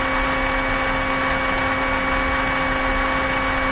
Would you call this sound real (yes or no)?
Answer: yes